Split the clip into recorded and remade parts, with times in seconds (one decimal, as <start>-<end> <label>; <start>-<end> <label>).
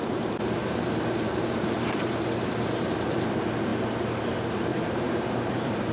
0.0-0.6 recorded; 0.6-2.1 remade; 2.1-4.7 recorded; 4.7-5.9 remade